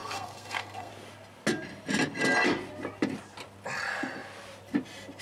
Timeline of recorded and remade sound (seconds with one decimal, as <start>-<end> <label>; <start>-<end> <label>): 0.0-0.9 remade; 0.9-5.2 recorded